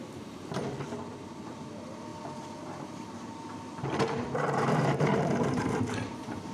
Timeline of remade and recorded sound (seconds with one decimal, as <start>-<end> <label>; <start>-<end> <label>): 0.0-2.1 remade; 2.1-2.8 recorded; 2.8-6.5 remade